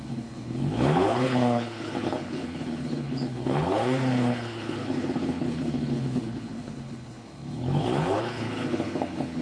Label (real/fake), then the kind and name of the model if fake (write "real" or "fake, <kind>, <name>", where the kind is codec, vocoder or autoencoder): fake, codec, HILCodec